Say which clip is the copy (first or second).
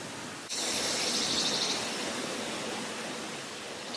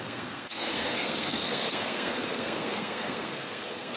second